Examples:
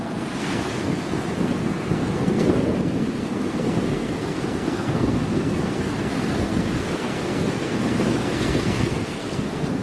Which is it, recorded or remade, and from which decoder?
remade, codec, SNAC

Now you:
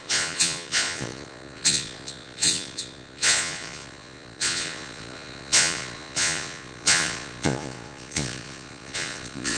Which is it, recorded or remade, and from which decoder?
remade, vocoder, Vocos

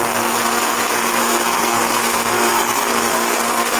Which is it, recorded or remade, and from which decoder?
remade, codec, SNAC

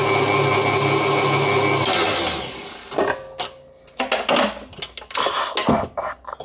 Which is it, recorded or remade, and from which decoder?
recorded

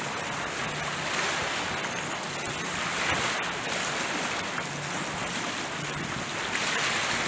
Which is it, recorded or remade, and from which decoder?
recorded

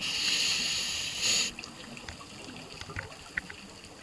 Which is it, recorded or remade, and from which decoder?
recorded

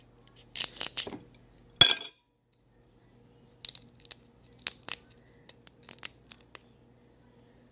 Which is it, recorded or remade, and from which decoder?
recorded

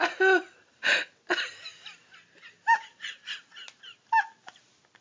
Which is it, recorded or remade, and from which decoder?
recorded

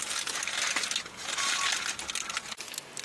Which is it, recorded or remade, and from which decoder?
recorded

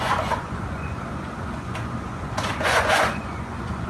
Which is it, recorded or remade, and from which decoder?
remade, vocoder, Vocos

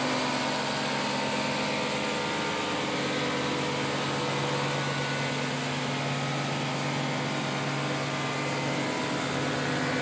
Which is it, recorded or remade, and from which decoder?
recorded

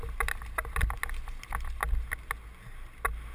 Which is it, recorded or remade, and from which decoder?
recorded